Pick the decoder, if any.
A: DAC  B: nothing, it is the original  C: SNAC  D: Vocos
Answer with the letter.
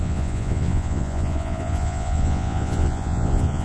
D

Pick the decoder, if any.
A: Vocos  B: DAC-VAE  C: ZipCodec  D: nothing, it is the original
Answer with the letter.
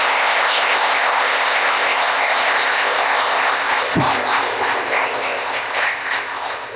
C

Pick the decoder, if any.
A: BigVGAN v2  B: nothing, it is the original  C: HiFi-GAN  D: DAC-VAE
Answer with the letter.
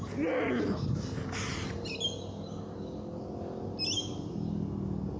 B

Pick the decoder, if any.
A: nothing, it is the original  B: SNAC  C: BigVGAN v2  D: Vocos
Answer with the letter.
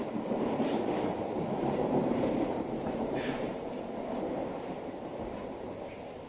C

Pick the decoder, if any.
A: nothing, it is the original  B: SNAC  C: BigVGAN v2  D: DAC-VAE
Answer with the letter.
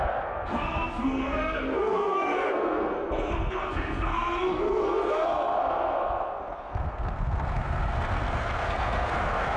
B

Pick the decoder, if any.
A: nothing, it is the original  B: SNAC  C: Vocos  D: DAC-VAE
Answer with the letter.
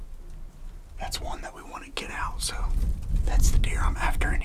A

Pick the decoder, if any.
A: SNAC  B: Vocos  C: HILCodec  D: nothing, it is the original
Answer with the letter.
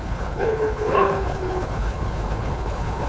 C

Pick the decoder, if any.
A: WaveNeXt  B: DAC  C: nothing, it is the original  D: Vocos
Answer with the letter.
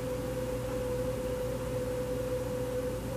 C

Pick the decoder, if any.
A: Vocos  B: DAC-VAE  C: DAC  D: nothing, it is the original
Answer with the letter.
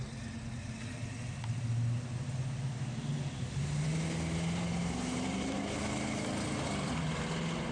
D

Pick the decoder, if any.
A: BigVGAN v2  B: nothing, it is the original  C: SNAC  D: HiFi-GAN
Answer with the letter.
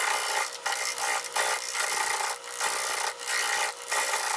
B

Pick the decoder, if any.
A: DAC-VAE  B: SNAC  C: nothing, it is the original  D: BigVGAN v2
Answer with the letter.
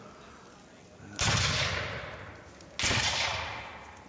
C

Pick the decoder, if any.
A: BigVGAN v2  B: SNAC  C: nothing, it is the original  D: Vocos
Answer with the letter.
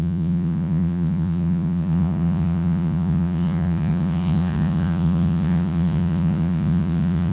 D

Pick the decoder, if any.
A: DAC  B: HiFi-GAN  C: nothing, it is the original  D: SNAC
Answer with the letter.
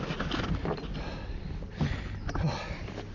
C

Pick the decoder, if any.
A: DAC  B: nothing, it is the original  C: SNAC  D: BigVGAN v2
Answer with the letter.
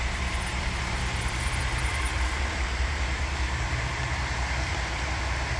D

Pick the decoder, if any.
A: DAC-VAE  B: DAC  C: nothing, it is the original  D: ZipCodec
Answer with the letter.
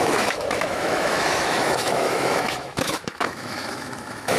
A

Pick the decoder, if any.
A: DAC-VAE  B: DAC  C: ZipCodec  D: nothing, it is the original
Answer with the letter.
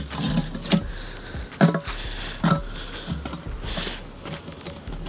D